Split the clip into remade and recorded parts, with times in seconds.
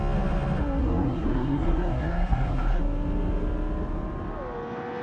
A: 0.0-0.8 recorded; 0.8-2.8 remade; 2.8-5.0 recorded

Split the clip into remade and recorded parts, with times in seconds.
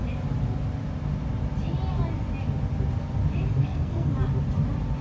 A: 0.0-3.6 recorded; 3.6-4.1 remade; 4.1-5.0 recorded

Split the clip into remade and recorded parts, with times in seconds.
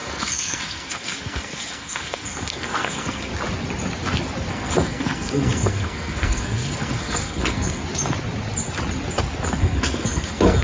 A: 0.0-3.3 remade; 3.3-4.5 recorded; 4.5-7.8 remade; 7.8-9.6 recorded; 9.6-10.6 remade